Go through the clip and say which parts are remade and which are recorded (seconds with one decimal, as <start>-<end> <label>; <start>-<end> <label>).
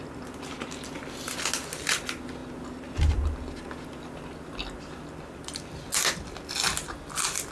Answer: 0.0-7.5 recorded